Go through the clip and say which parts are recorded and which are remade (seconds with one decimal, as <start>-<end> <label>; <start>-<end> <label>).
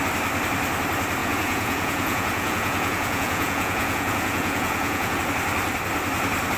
0.0-1.2 recorded; 1.2-5.2 remade; 5.2-6.6 recorded